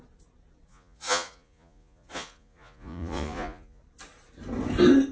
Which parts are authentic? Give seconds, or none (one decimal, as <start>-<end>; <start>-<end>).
0.0-0.7; 3.8-5.1